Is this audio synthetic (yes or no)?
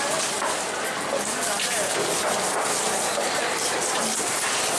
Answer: no